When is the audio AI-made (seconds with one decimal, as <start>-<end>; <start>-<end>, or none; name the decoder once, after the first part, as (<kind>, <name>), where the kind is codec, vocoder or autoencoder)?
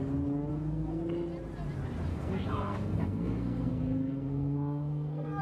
0.5-1.0 (codec, SNAC); 2.1-5.4